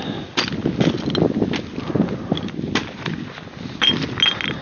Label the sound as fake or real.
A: real